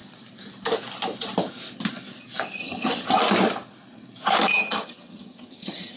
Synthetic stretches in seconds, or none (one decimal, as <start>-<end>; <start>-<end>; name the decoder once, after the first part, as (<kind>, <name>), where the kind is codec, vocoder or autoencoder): 2.6-3.2 (vocoder, HiFi-GAN); 4.5-6.0